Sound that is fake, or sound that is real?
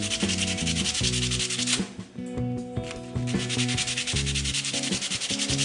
real